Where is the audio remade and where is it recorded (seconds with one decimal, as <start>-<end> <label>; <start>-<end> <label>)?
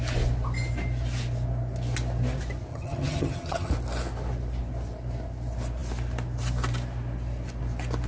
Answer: 0.0-2.7 recorded; 2.7-3.7 remade; 3.7-8.1 recorded